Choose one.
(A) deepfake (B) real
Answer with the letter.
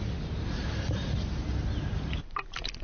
B